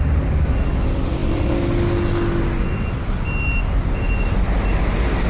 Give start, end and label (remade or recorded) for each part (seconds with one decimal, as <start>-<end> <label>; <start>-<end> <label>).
0.0-5.3 recorded